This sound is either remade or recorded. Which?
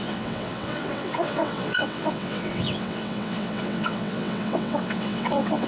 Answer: remade